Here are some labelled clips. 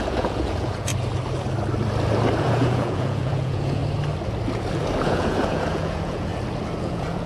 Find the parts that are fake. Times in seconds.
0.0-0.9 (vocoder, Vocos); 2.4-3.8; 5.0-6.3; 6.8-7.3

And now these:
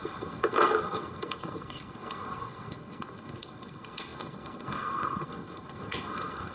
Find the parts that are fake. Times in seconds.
0.0-6.5 (codec, SNAC)

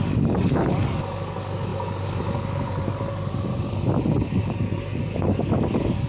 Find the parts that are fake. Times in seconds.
0.0-3.5 (codec, DAC); 4.2-6.1